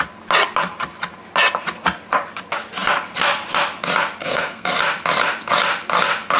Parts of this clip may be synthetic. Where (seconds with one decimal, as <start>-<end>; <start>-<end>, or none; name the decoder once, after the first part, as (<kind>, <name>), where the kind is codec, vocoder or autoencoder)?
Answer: 4.2-4.7 (codec, SNAC)